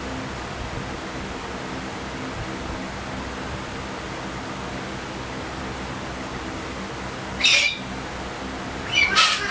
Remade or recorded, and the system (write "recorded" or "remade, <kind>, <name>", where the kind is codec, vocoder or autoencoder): recorded